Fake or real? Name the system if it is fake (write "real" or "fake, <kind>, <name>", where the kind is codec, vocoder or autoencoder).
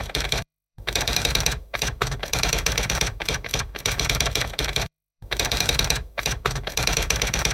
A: fake, autoencoder, DAC-VAE